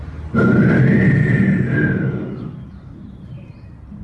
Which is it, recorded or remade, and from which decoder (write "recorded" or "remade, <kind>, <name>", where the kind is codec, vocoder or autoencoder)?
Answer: remade, vocoder, BigVGAN v2